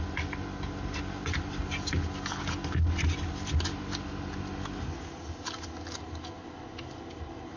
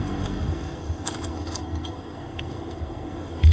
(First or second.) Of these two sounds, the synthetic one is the second